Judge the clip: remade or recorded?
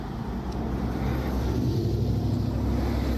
recorded